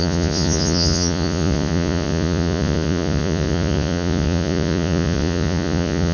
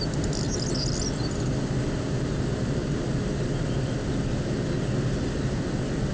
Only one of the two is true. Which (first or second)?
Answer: second